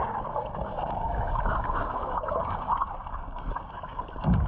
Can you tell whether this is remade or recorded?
remade